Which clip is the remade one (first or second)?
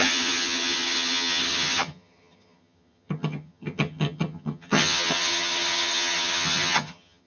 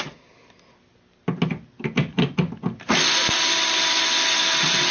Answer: first